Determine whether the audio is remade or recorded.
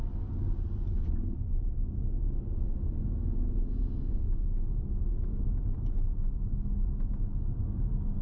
recorded